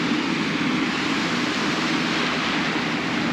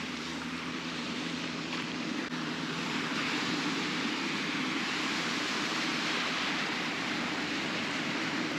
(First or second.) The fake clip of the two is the second